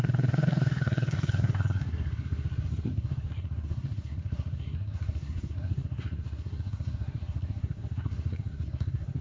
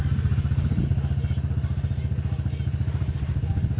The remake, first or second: first